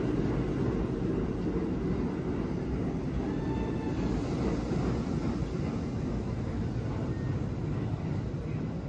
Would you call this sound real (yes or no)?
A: yes